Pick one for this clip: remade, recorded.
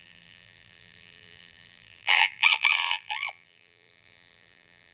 remade